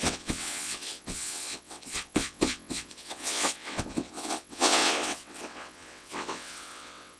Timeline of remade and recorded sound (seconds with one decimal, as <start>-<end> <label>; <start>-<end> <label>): 0.0-7.2 remade